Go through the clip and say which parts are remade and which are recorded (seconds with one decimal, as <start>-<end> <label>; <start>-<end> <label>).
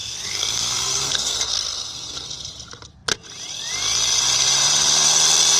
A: 0.0-2.5 remade; 2.5-5.6 recorded